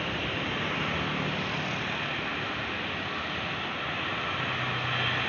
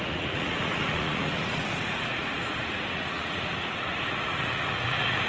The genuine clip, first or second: first